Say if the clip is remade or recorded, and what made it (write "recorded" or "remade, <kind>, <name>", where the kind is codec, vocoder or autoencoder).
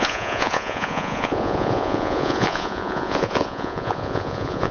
remade, vocoder, Vocos